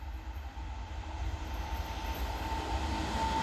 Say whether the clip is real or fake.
real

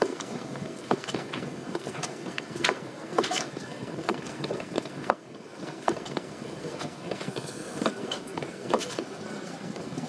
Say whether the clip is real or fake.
fake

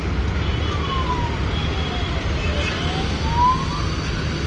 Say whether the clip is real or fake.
real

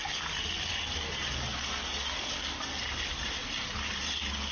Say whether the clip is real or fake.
real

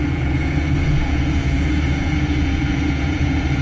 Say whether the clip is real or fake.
fake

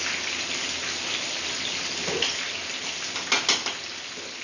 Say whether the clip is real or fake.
real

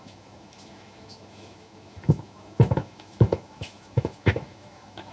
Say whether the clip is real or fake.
fake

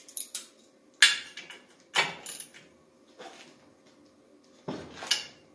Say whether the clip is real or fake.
real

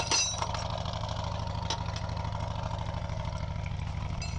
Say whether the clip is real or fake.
real